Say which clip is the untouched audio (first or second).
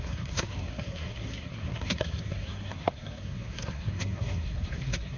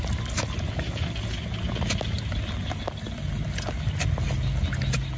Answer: second